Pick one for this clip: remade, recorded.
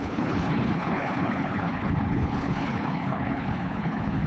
remade